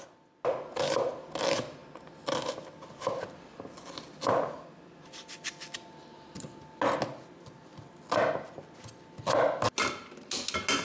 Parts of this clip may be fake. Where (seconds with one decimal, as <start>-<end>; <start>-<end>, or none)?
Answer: none